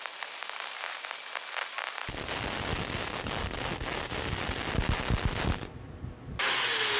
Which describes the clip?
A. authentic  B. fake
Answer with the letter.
A